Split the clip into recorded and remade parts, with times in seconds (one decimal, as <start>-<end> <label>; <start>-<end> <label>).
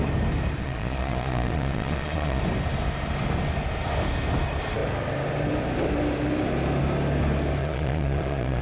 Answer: 0.0-0.6 recorded; 0.6-2.4 remade; 2.4-7.6 recorded; 7.6-8.6 remade